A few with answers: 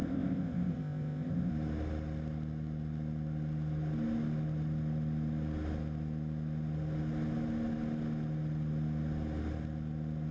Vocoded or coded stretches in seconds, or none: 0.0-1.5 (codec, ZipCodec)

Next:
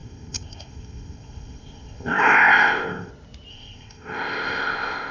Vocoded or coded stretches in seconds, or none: 0.0-3.1 (codec, ZipCodec); 3.5-5.1

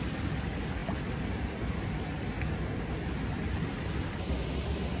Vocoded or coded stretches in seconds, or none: none

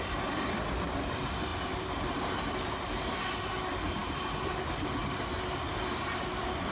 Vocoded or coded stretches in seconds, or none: none

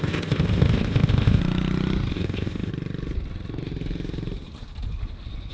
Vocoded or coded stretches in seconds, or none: 0.0-1.4 (codec, ZipCodec); 2.1-2.7

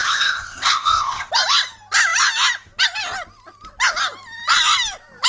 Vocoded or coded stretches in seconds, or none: 0.0-1.3 (codec, ZipCodec)